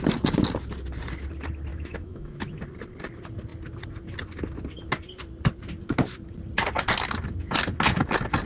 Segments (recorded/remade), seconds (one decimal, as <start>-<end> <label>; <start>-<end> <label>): 0.0-1.7 recorded; 1.7-2.6 remade; 2.6-8.5 recorded